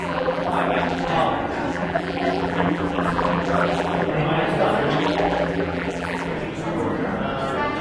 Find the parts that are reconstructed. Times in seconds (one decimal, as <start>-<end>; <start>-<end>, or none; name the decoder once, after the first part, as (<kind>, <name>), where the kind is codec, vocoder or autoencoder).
0.0-1.1 (vocoder, BigVGAN v2); 1.7-4.1; 5.0-6.3